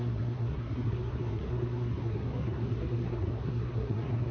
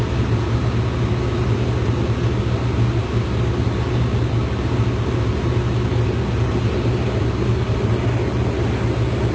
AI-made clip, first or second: first